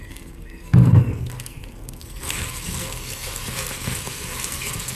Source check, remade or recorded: remade